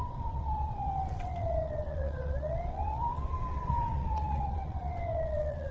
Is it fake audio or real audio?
fake